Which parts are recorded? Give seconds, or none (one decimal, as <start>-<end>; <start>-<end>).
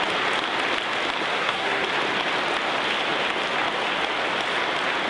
0.0-1.3; 1.8-5.1